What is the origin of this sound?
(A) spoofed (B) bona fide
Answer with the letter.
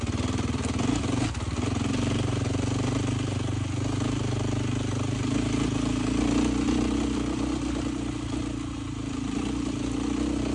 B